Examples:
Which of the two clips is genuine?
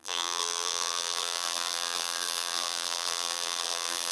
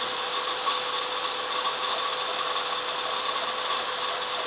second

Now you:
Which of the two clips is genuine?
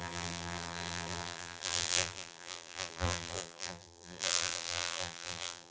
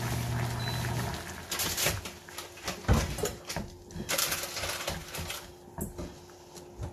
second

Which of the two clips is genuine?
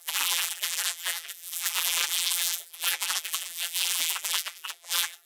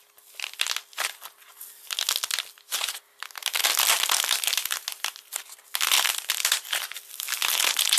second